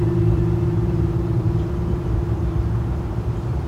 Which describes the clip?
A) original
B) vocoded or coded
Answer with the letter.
B